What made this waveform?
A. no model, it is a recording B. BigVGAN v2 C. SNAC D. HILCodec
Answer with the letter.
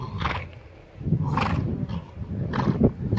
A